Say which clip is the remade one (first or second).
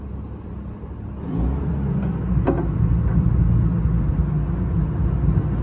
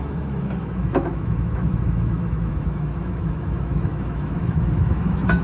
second